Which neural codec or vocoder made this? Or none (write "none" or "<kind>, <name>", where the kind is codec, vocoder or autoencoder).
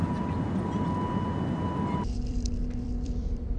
vocoder, BigVGAN v2